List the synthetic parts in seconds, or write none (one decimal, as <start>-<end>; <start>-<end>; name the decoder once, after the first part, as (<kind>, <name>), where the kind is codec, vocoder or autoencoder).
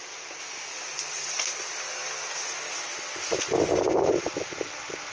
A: 0.7-3.0 (vocoder, BigVGAN v2)